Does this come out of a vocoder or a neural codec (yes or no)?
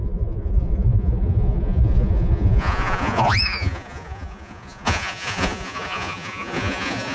yes